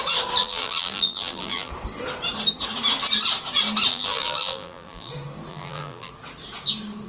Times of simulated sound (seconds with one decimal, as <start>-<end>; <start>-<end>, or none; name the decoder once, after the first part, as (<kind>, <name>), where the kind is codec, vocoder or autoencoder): 0.4-1.7 (vocoder, BigVGAN v2); 3.9-5.1; 5.5-6.1